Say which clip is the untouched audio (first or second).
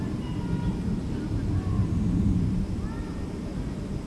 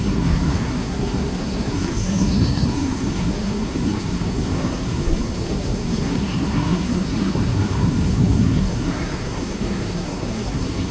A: first